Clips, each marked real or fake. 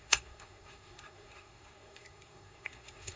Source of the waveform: fake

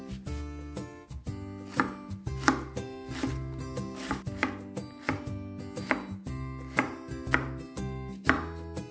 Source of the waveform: real